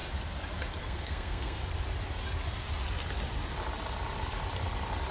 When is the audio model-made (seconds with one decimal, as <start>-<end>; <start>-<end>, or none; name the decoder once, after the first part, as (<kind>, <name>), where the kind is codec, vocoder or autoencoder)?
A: 0.8-1.6 (codec, SNAC)